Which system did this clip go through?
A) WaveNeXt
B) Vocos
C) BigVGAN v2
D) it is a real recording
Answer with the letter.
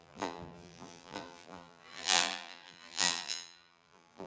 C